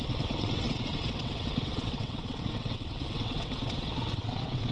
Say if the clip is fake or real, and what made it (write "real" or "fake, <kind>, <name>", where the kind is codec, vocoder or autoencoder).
fake, vocoder, WaveNeXt